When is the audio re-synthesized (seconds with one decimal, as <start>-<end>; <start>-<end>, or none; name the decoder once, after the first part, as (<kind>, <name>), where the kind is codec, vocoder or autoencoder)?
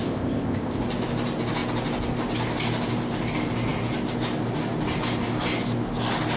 0.0-0.8 (codec, ZipCodec)